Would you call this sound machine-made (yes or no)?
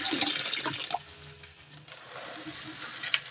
no